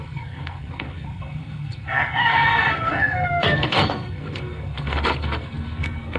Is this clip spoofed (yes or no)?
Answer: yes